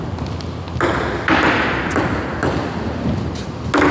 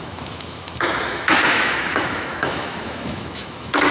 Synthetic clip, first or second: second